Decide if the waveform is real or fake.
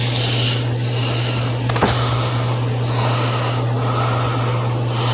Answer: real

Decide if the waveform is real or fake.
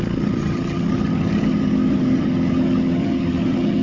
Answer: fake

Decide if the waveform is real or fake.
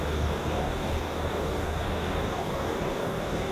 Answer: fake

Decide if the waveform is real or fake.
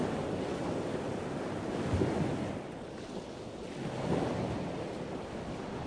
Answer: real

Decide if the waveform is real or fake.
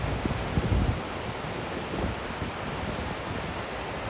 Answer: real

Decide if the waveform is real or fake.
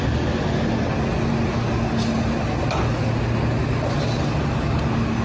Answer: real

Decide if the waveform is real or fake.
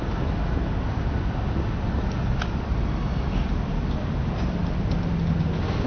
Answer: real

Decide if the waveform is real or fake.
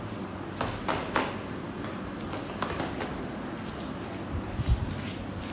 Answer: real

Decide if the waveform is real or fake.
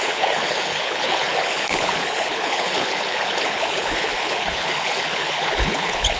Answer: fake